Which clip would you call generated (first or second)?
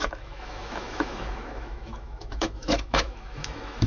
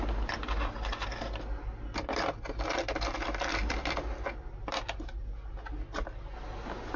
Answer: first